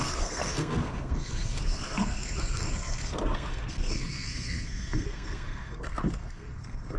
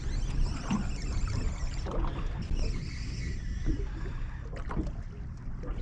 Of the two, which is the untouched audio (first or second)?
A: second